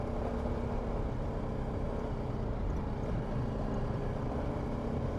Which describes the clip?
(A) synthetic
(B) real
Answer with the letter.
B